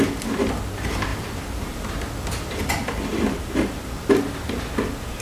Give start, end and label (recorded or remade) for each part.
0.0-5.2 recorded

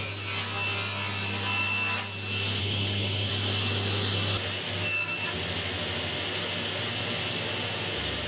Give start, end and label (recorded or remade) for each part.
0.0-2.6 recorded; 2.6-3.3 remade; 3.3-8.3 recorded

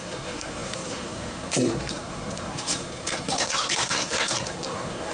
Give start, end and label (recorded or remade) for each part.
0.0-5.1 remade

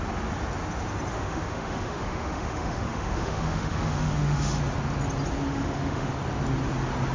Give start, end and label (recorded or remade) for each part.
0.0-1.1 recorded; 1.1-4.6 remade; 4.6-5.5 recorded; 5.5-6.1 remade; 6.1-7.1 recorded